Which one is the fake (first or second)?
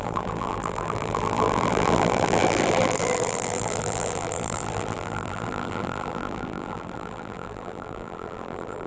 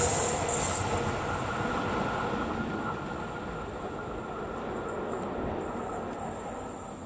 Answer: first